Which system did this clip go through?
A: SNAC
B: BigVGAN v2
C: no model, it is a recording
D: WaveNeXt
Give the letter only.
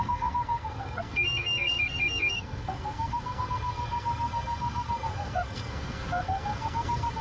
A